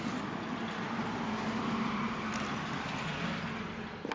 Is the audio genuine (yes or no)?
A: yes